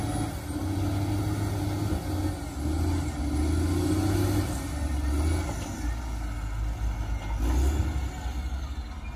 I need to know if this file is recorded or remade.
recorded